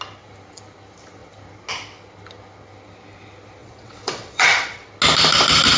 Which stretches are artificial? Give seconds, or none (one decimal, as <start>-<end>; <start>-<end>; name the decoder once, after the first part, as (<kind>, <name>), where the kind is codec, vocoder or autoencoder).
3.6-4.9 (vocoder, WaveNeXt)